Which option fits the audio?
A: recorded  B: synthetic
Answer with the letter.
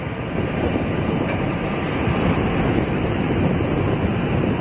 B